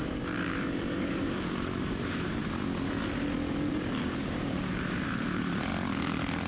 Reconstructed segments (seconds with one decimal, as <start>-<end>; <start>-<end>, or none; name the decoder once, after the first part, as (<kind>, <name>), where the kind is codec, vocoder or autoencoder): 0.0-2.4 (vocoder, BigVGAN v2); 3.7-5.7